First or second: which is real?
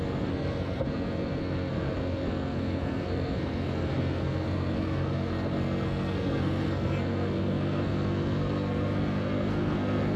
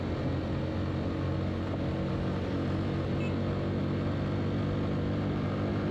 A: second